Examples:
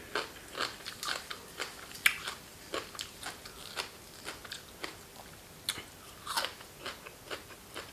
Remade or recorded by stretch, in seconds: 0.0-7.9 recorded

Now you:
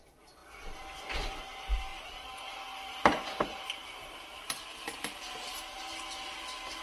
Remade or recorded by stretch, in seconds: 0.0-1.9 recorded; 1.9-5.8 remade; 5.8-6.8 recorded

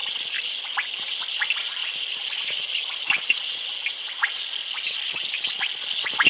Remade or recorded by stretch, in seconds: 0.0-0.6 remade; 0.6-1.8 recorded; 1.8-3.4 remade; 3.4-6.3 recorded

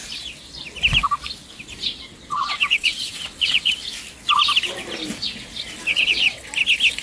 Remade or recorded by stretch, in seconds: 0.0-2.1 recorded; 2.1-3.7 remade; 3.7-5.9 recorded; 5.9-6.5 remade; 6.5-7.0 recorded

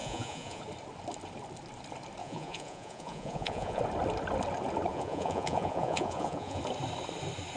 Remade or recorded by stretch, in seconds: 0.0-0.6 remade; 0.6-2.2 recorded; 2.2-3.8 remade; 3.8-4.9 recorded; 4.9-6.6 remade; 6.6-7.6 recorded

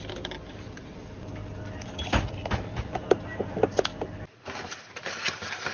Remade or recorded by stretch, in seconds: 0.0-5.7 recorded

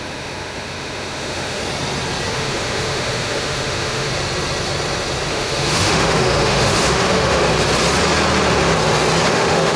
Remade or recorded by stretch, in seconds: 0.0-1.6 remade; 1.6-2.3 recorded; 2.3-4.1 remade; 4.1-5.3 recorded; 5.3-7.4 remade; 7.4-9.3 recorded; 9.3-9.8 remade